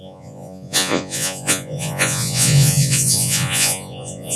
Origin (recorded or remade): remade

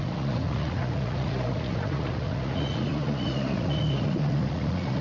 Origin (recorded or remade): remade